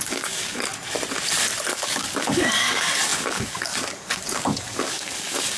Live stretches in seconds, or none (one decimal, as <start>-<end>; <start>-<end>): 0.7-1.7